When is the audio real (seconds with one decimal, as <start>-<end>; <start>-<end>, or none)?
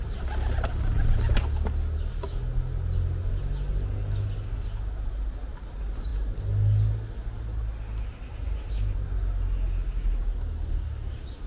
0.0-11.5